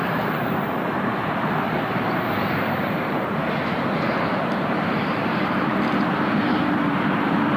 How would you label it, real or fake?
fake